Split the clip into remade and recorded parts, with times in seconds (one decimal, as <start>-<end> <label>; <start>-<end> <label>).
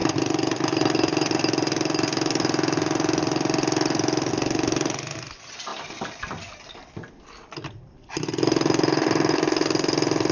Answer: 0.0-10.3 recorded